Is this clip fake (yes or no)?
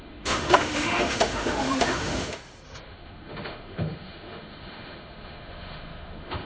yes